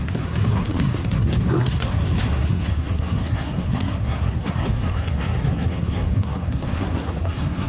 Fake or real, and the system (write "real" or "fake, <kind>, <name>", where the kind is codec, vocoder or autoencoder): fake, codec, SNAC